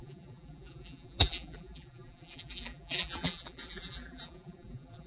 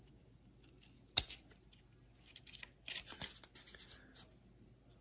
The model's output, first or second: first